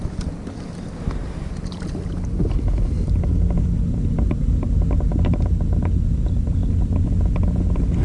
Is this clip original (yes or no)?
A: yes